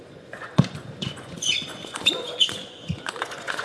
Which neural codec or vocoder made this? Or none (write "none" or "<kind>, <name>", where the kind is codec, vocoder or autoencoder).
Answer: vocoder, Vocos